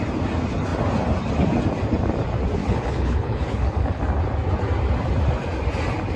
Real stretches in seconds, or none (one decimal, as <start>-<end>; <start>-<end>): 0.0-2.6; 4.0-6.2